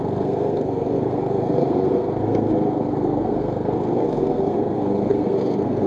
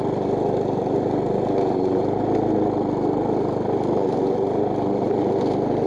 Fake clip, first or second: first